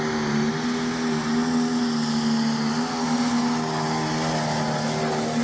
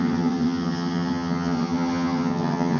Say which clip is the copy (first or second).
second